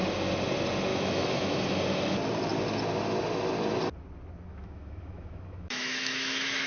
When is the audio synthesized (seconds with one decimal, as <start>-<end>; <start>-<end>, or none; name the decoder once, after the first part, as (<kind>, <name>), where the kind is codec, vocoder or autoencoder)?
0.9-1.6 (autoencoder, DAC-VAE); 4.5-6.7